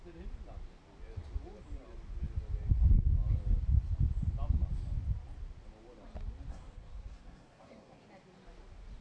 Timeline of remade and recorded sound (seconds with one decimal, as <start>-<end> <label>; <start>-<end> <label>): 0.0-6.5 recorded; 6.5-8.0 remade; 8.0-9.0 recorded